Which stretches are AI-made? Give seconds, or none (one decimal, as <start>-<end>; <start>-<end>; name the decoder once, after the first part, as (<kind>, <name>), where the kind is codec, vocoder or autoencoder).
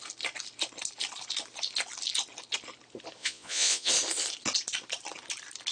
3.2-3.9 (vocoder, Vocos)